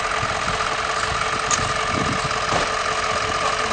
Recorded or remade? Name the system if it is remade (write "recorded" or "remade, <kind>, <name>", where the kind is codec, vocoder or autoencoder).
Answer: recorded